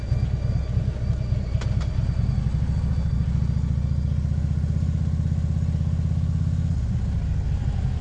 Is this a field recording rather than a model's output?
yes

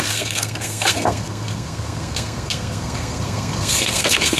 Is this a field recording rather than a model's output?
no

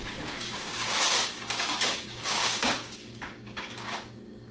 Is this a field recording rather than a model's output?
no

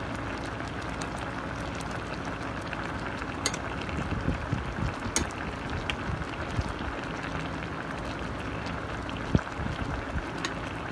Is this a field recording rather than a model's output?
yes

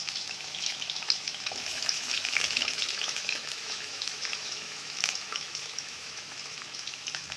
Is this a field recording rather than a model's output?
no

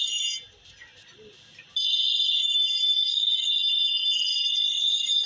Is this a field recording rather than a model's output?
yes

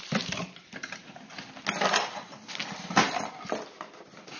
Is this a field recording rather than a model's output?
yes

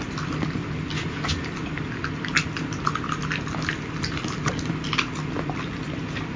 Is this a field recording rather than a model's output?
yes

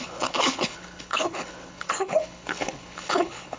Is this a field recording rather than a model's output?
no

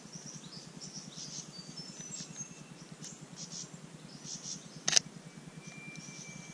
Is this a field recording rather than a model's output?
yes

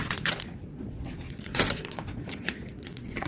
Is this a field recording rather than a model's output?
no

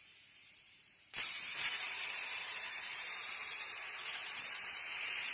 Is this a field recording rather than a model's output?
no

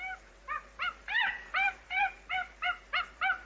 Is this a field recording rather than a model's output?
no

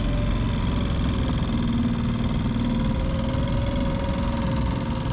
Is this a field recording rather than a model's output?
yes